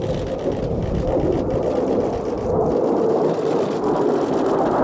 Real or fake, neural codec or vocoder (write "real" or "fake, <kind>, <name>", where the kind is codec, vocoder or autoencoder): real